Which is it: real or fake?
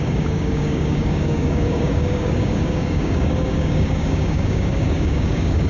fake